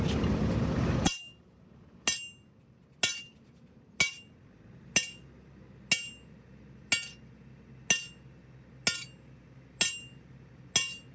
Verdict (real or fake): real